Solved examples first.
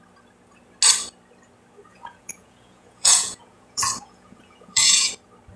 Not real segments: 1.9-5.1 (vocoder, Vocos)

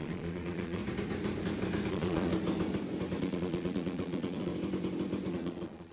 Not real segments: 0.0-0.8 (vocoder, Vocos); 1.9-2.3; 3.2-4.5; 5.3-5.9